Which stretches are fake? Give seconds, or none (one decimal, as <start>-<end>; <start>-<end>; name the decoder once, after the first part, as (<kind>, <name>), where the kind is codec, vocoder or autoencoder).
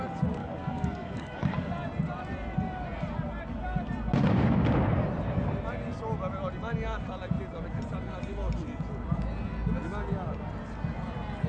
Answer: 0.4-1.7 (codec, DAC)